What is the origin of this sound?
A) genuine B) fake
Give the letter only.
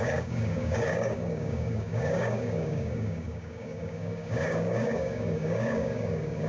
B